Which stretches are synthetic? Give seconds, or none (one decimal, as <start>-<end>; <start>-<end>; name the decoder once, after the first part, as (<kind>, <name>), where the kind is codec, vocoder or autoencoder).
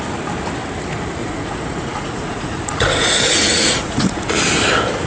1.2-4.3 (vocoder, Vocos)